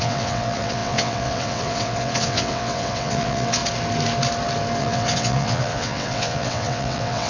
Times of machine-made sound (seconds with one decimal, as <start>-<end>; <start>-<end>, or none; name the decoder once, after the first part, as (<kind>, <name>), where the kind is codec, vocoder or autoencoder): 0.0-3.6 (vocoder, WaveNeXt); 4.8-7.3